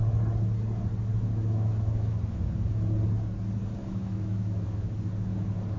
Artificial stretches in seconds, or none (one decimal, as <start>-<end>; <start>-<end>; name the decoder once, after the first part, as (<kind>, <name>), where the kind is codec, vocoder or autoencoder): 1.1-2.5 (autoencoder, DAC-VAE); 3.8-4.9